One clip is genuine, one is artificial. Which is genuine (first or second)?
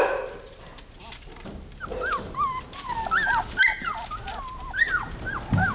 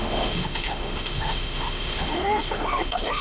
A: first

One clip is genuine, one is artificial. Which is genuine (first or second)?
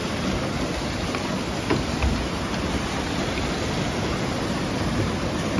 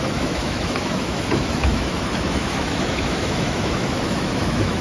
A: first